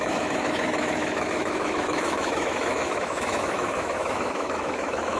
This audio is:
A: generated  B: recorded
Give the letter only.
A